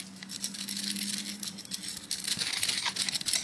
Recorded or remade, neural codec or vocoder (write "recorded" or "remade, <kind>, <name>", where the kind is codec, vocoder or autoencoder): recorded